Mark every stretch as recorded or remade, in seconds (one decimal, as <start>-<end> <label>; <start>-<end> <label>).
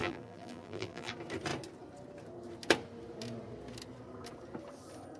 0.0-1.1 remade; 1.1-5.2 recorded